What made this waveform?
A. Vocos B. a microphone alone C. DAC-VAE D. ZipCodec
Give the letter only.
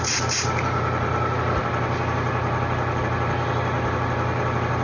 B